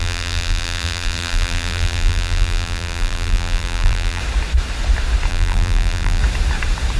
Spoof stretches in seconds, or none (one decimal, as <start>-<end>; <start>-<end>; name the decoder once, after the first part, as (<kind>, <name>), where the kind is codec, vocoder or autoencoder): 0.0-4.2 (vocoder, BigVGAN v2); 5.3-6.2